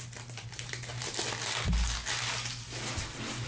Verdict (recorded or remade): recorded